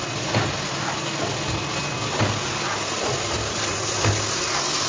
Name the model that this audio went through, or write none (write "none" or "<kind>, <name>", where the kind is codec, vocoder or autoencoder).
none